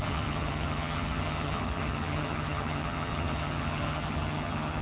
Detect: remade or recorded remade